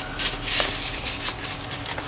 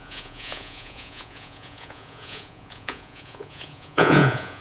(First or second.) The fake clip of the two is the second